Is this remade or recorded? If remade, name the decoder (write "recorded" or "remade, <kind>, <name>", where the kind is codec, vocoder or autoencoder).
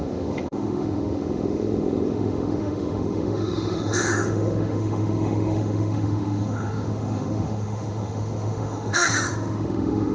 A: remade, autoencoder, DAC-VAE